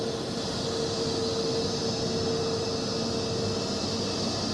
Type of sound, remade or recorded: recorded